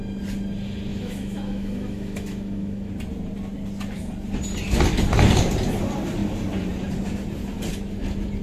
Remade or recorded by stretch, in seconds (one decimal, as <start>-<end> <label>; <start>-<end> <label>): 0.0-0.9 recorded; 0.9-2.9 remade; 2.9-8.4 recorded